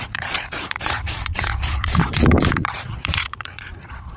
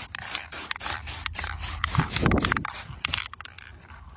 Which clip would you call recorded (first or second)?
second